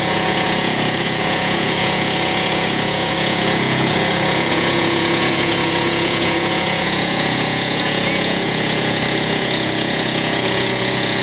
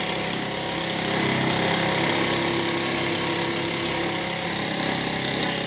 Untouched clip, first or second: second